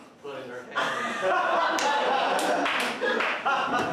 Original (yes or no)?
yes